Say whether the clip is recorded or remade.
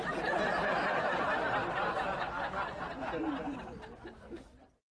recorded